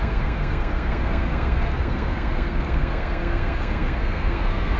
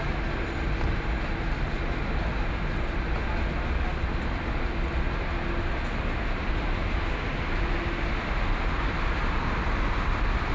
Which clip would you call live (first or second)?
second